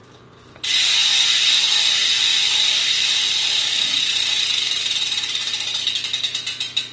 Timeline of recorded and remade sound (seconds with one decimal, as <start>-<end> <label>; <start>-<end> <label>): 0.0-2.3 recorded; 2.3-5.8 remade; 5.8-6.9 recorded